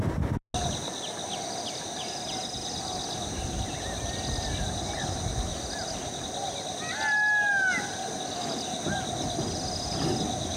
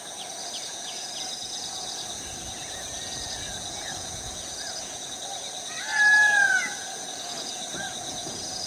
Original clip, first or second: first